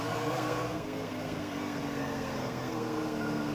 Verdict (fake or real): fake